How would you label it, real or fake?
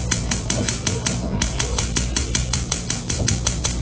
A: fake